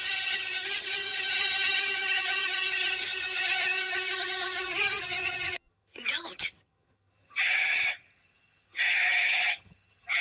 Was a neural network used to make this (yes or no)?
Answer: yes